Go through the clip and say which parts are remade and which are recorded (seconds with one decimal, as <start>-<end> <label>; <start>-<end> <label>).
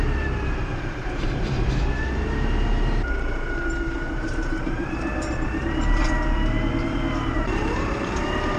0.0-5.1 remade; 5.1-7.3 recorded; 7.3-8.6 remade